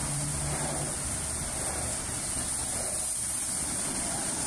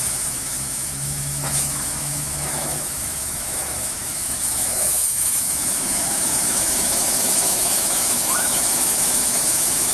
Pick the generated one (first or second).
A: second